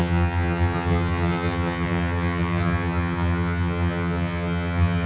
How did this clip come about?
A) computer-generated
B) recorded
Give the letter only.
A